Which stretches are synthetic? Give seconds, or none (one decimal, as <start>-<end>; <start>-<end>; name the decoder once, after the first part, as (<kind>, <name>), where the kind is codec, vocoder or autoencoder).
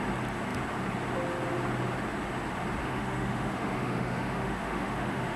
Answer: 2.8-5.4 (autoencoder, DAC-VAE)